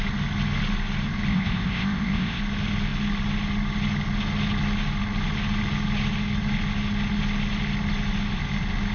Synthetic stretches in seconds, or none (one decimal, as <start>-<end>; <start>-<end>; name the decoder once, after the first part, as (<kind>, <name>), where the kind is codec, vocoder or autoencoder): 1.3-2.4 (codec, ZipCodec)